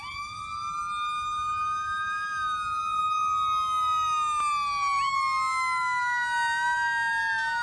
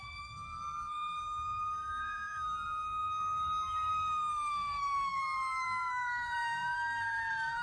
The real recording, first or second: first